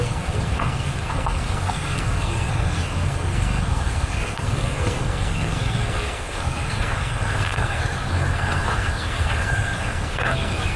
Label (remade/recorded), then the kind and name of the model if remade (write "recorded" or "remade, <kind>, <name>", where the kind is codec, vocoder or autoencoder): remade, codec, SNAC